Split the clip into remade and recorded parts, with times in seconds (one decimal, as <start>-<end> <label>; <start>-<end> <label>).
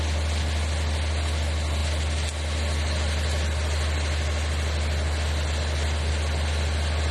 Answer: 0.0-7.1 recorded